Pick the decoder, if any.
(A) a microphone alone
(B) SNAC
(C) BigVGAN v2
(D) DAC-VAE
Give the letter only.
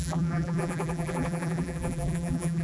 C